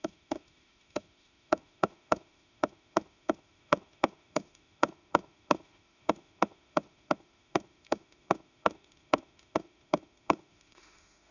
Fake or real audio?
fake